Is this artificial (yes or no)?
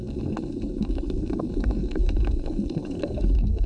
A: yes